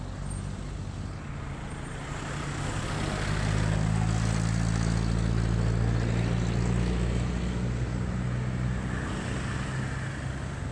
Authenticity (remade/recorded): recorded